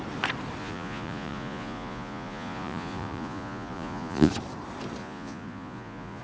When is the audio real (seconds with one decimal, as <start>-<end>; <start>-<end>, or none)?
0.0-0.6; 4.3-5.0